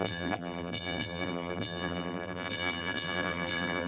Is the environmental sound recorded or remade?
remade